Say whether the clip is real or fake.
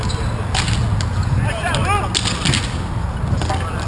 real